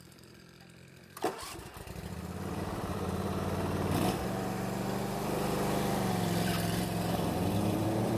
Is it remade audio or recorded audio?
remade